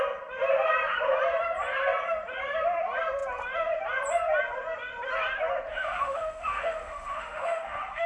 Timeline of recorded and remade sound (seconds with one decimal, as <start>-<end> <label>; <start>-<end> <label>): 0.0-5.7 recorded; 5.7-8.1 remade

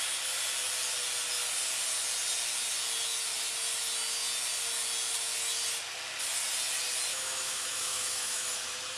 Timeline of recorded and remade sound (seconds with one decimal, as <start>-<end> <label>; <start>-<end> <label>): 0.0-7.1 recorded; 7.1-8.5 remade; 8.5-9.0 recorded

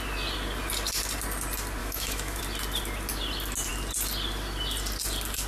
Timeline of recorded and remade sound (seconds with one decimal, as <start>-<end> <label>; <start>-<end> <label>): 0.0-1.8 recorded; 1.8-2.4 remade; 2.4-5.5 recorded

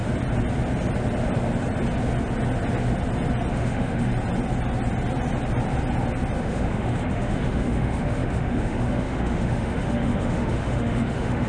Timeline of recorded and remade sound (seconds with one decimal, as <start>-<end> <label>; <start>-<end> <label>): 0.0-3.5 recorded; 3.5-4.1 remade; 4.1-6.4 recorded; 6.4-11.5 remade

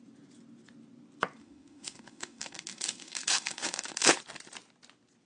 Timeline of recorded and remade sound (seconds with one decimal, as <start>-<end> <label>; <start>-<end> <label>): 0.0-1.4 recorded; 1.4-4.2 remade; 4.2-5.3 recorded

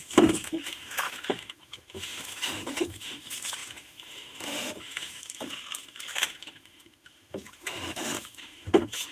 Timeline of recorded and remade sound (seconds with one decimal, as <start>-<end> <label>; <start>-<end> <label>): 0.0-9.1 remade

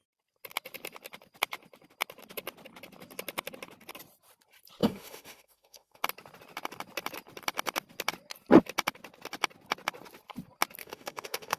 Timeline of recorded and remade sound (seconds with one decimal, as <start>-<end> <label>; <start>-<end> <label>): 0.0-4.8 recorded; 4.8-6.0 remade; 6.0-10.8 recorded; 10.8-11.6 remade